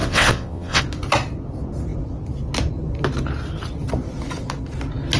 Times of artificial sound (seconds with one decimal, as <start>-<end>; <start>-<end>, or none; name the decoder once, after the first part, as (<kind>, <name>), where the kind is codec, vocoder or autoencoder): 0.0-0.8 (vocoder, WaveNeXt)